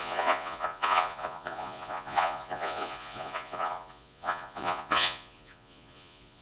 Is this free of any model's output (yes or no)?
no